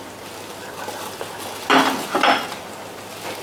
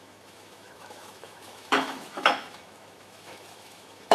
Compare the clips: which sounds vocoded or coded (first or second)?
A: second